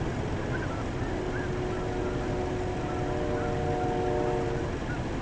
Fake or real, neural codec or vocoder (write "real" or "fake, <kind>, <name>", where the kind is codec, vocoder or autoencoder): real